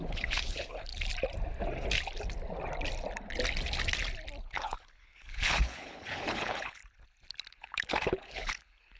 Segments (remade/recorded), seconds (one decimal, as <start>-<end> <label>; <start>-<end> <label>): 0.0-0.9 remade; 0.9-4.4 recorded; 4.4-6.8 remade; 6.8-7.5 recorded; 7.5-9.0 remade